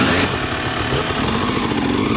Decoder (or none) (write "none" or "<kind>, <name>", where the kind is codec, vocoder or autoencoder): none